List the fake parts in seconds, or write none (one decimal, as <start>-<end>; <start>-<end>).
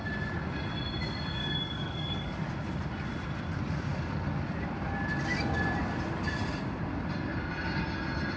1.4-2.5